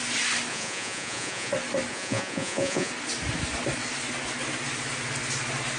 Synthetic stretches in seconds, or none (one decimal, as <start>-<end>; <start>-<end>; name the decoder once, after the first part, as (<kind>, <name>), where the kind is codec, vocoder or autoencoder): 0.5-1.5 (vocoder, Vocos); 1.9-2.9